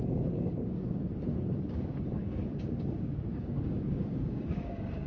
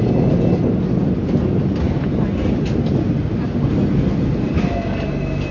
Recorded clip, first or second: second